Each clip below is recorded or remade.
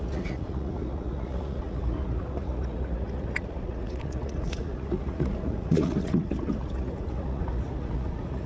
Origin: remade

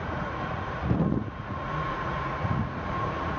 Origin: remade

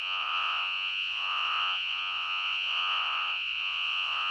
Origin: remade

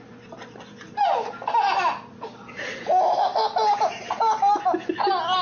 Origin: recorded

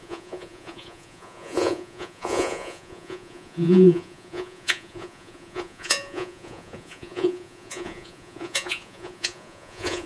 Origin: remade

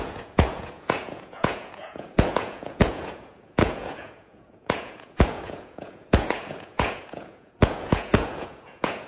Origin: remade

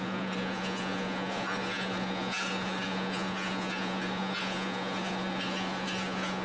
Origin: remade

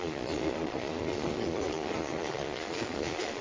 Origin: remade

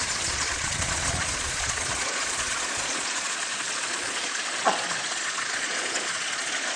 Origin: remade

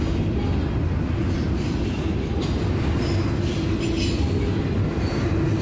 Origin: recorded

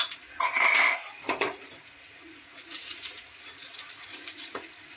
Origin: remade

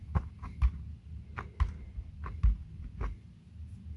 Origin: recorded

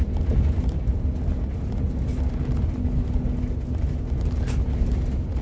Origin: recorded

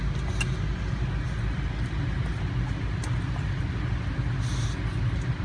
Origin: recorded